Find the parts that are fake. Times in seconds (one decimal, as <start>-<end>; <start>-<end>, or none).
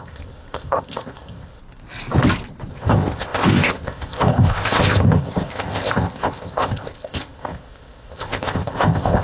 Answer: 0.0-1.6; 2.7-9.2